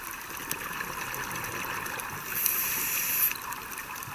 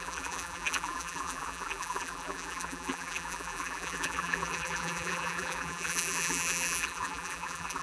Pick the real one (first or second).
first